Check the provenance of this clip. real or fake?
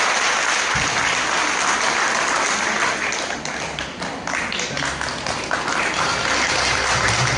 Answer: real